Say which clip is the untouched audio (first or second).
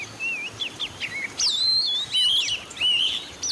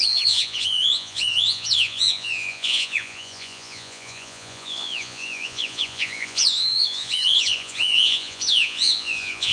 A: first